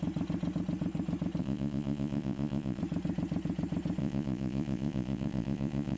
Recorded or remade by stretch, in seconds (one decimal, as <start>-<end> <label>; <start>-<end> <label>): 0.0-1.4 recorded; 1.4-2.8 remade; 2.8-4.0 recorded; 4.0-6.0 remade